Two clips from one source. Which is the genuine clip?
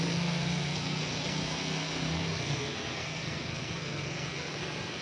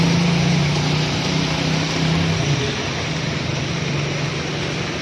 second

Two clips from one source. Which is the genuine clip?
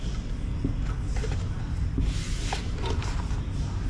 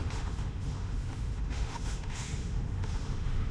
first